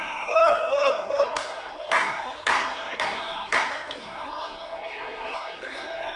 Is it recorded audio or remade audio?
remade